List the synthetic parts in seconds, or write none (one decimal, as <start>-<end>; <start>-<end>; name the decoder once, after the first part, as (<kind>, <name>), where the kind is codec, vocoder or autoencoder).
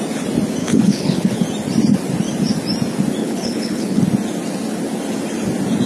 0.6-1.4 (codec, HILCodec); 3.2-4.0